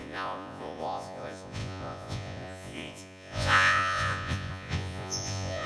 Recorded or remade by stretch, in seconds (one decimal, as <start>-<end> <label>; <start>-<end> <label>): 0.0-5.7 remade